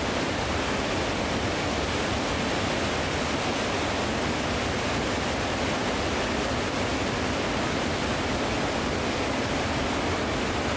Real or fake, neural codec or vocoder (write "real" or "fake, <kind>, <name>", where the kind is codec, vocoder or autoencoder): real